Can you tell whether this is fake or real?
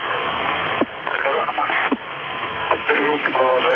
fake